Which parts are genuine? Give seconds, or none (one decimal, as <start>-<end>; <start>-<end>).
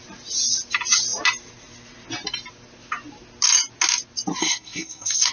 0.0-4.4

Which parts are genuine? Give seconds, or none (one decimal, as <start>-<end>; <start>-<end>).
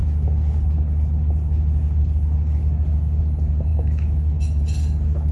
0.0-3.7; 4.6-5.3